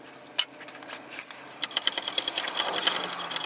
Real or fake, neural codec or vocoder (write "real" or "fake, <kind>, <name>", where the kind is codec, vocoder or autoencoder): real